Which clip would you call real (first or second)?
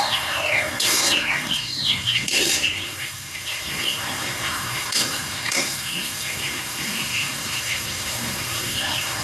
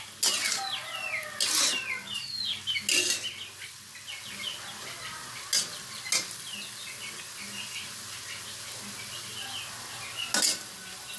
second